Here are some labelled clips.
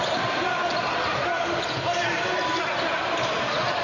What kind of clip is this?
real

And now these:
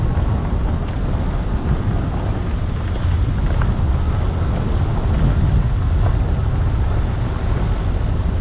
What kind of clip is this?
real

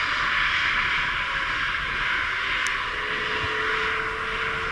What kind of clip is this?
real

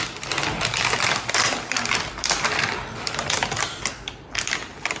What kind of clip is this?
real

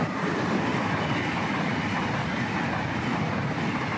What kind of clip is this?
fake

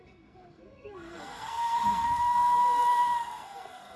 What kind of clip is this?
fake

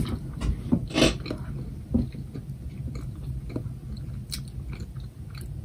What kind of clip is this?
real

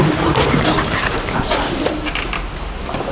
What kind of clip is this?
real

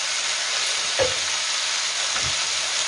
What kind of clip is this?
real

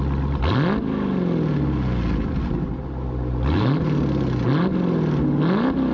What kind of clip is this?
real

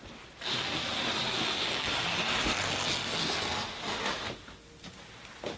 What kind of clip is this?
real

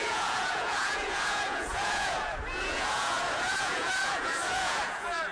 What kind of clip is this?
fake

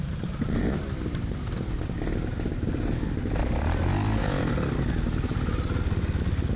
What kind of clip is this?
real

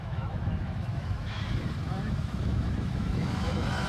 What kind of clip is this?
fake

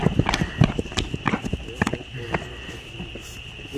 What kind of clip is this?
real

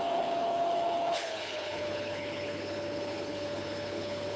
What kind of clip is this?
fake